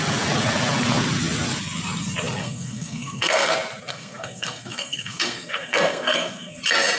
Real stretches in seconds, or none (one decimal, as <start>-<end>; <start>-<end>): 0.0-2.4; 3.5-3.9; 6.6-7.0